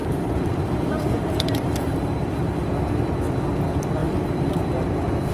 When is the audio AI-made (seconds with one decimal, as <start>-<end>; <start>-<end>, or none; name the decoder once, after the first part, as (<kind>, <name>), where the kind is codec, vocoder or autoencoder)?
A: 0.0-2.7 (vocoder, BigVGAN v2); 4.0-4.6